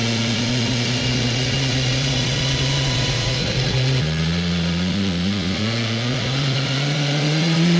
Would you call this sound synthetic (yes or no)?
yes